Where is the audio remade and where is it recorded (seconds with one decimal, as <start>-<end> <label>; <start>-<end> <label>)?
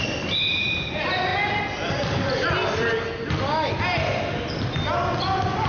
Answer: 0.0-5.7 recorded